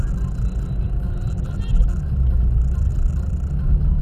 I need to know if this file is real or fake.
real